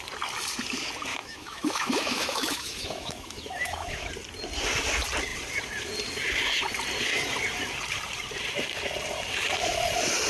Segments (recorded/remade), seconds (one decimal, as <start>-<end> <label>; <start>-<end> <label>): 0.0-1.1 recorded; 1.1-4.1 remade; 4.1-10.3 recorded